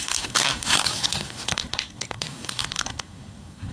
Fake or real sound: fake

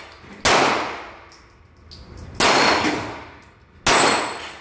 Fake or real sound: real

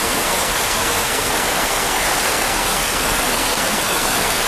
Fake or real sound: fake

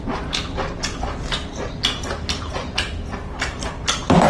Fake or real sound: real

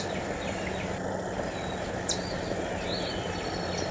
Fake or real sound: real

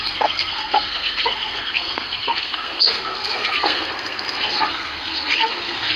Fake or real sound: fake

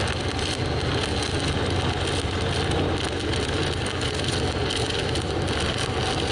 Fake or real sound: real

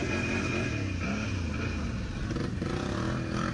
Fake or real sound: real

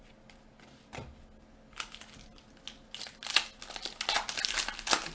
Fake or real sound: real